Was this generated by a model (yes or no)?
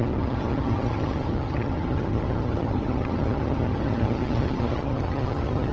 yes